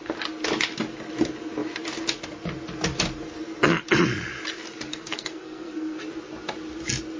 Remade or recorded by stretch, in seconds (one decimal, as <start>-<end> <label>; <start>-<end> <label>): 0.0-4.9 recorded; 4.9-6.0 remade; 6.0-7.2 recorded